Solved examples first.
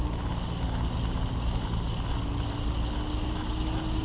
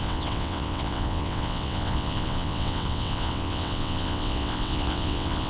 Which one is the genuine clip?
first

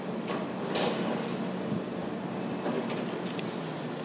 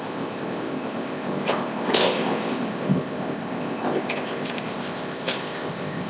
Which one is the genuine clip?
first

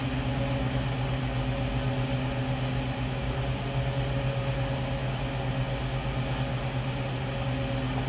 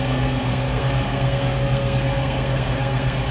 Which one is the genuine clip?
first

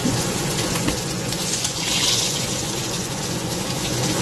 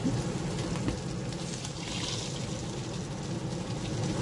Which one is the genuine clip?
second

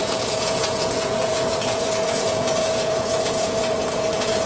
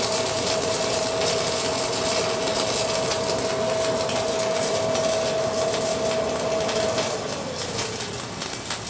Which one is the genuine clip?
second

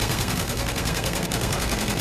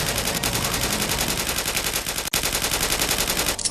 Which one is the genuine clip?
second